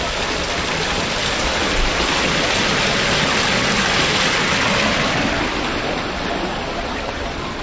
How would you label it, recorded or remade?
recorded